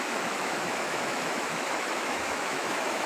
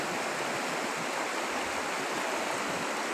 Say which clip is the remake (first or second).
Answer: first